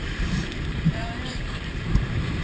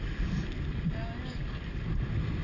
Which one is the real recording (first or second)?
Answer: second